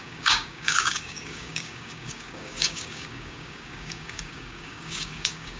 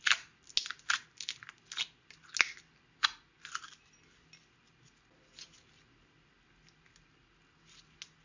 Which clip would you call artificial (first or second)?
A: first